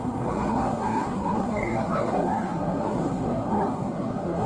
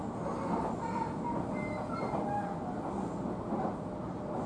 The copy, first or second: first